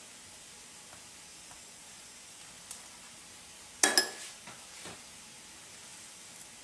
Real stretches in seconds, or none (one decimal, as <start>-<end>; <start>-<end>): 0.0-1.3; 2.4-6.6